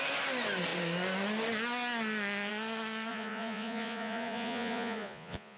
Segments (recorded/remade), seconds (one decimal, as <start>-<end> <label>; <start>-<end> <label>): 0.0-3.1 recorded; 3.1-5.6 remade